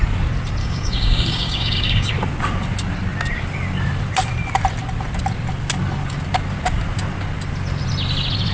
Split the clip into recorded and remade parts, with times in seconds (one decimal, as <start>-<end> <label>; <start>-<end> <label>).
0.0-0.6 recorded; 0.6-2.1 remade; 2.1-8.5 recorded